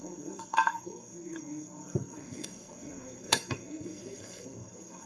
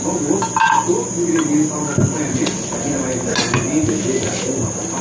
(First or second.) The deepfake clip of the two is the first